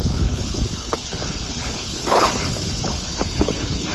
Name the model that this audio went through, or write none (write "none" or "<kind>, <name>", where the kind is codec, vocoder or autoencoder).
codec, HILCodec